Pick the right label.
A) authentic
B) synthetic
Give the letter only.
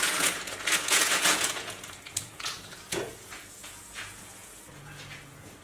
B